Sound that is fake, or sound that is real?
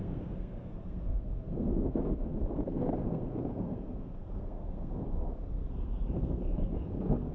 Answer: fake